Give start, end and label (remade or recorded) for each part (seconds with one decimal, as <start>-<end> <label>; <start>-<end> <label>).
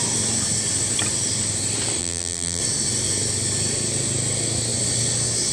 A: 0.0-2.0 recorded; 2.0-2.6 remade; 2.6-5.5 recorded